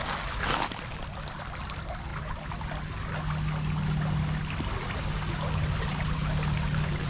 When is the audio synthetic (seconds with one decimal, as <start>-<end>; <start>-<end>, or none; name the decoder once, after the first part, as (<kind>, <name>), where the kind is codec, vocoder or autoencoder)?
none